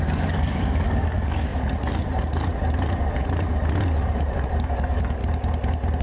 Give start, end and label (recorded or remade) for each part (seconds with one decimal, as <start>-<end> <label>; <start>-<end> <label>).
0.0-1.5 remade; 1.5-4.6 recorded; 4.6-5.2 remade; 5.2-6.0 recorded